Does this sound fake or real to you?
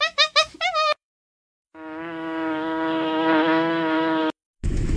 fake